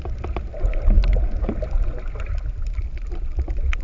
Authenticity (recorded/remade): recorded